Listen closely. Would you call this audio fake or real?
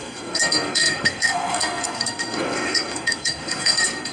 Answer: fake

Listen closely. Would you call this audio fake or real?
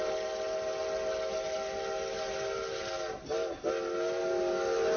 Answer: real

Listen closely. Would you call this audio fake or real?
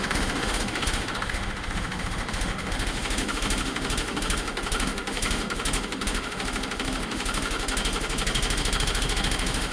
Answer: fake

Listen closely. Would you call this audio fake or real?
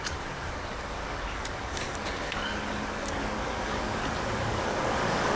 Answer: fake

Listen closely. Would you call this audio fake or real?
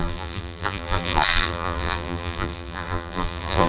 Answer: fake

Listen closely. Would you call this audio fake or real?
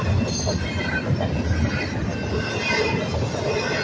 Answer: real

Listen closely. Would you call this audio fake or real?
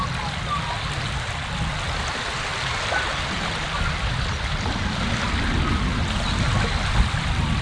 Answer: real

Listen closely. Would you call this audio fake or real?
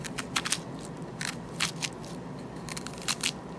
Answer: real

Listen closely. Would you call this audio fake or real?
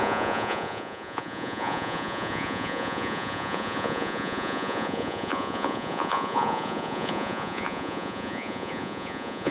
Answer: fake